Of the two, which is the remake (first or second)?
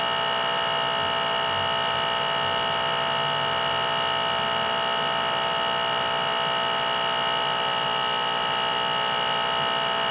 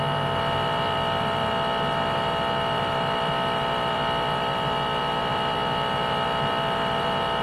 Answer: second